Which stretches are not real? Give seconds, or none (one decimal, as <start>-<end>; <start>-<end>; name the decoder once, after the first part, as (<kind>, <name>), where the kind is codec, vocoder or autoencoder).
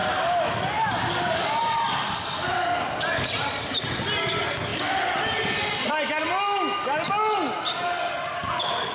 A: none